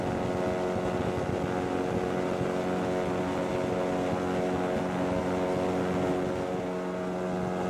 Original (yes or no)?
yes